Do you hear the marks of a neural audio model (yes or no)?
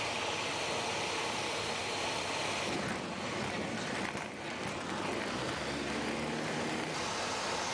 no